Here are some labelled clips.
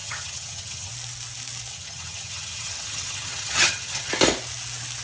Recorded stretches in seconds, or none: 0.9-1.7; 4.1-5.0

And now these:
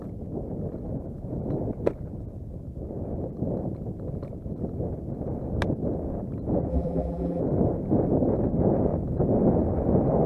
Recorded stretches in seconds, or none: 0.0-6.7; 7.4-10.3

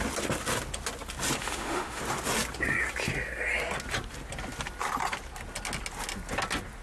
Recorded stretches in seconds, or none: 0.0-1.4; 2.0-6.8

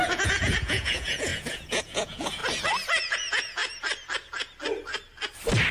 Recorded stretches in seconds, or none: 2.4-3.0; 3.6-5.7

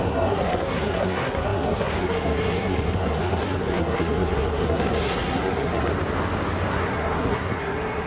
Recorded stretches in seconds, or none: 5.9-6.7

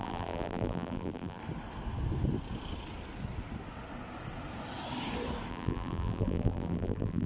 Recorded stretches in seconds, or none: 1.4-5.5